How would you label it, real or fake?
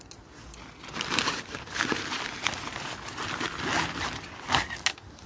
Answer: real